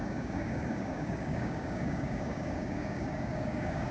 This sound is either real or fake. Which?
fake